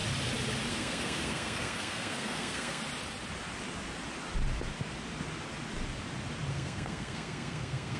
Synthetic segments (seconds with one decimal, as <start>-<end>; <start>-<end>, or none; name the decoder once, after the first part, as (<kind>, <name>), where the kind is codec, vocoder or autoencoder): 0.7-2.8 (codec, SNAC); 6.5-8.0